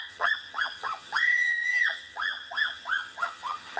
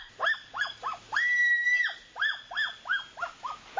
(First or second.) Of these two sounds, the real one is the second